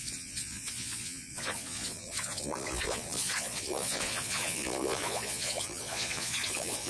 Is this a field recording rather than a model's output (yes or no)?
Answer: no